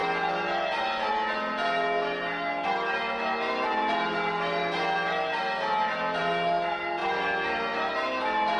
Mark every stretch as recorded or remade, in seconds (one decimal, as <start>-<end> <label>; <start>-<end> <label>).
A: 0.0-8.6 recorded